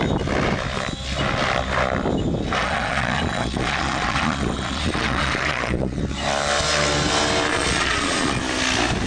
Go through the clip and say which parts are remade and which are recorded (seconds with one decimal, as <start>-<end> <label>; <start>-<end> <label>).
0.0-2.6 recorded; 2.6-6.0 remade; 6.0-7.5 recorded; 7.5-8.4 remade; 8.4-9.1 recorded